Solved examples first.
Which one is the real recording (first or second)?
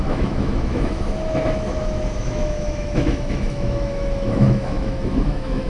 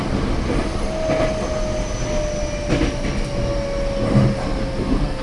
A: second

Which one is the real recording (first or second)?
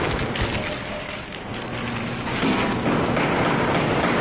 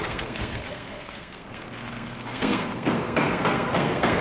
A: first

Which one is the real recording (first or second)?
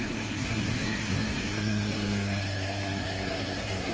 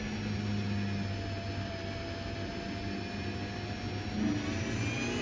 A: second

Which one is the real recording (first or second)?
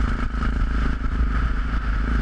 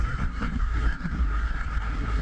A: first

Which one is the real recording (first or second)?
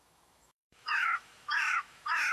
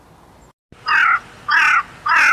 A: second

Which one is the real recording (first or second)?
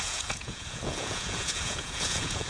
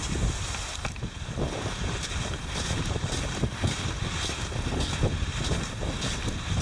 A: second